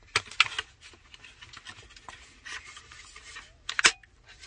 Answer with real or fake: real